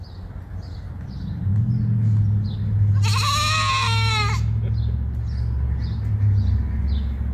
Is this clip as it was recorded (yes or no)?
yes